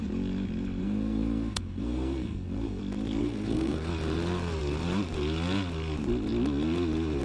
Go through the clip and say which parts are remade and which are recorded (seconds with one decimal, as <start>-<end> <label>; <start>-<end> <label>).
0.0-0.8 recorded; 0.8-2.8 remade; 2.8-3.2 recorded; 3.2-3.9 remade; 3.9-7.2 recorded